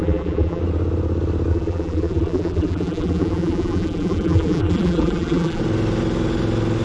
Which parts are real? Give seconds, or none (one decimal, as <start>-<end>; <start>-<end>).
0.6-1.5; 5.6-6.8